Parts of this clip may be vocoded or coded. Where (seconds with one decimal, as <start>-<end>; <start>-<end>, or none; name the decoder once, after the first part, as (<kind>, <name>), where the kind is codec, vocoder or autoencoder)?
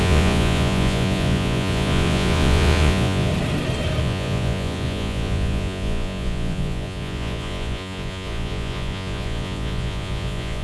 0.0-3.3 (vocoder, Vocos); 4.0-10.6